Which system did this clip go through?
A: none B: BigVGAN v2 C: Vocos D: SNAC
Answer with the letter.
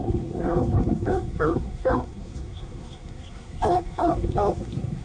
D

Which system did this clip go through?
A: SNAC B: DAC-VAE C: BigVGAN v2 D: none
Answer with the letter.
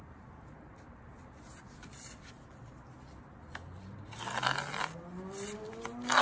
D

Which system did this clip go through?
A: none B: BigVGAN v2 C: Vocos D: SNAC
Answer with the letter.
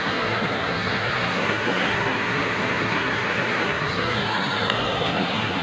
D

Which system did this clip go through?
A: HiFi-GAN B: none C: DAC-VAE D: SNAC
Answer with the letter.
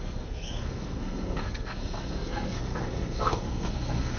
D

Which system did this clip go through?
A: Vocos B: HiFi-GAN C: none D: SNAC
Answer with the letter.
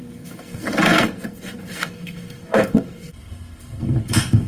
D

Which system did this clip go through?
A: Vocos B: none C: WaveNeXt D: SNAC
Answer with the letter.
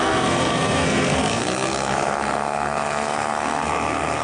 D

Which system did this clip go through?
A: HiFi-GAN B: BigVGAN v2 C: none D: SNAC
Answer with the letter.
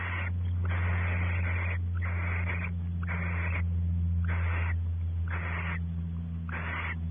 C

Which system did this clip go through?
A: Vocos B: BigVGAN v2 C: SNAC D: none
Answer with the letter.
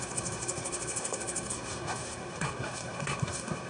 C